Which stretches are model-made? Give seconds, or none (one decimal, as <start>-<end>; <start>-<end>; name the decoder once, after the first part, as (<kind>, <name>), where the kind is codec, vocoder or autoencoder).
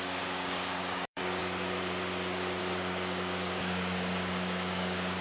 0.0-1.4 (codec, DAC); 2.6-5.2